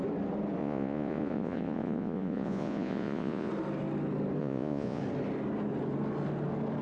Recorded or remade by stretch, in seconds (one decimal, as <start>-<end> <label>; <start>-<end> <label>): 0.0-0.6 recorded; 0.6-3.5 remade; 3.5-4.4 recorded; 4.4-5.0 remade; 5.0-6.8 recorded